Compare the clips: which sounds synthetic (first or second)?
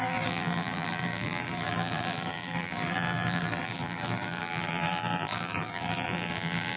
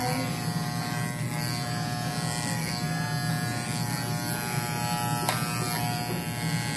first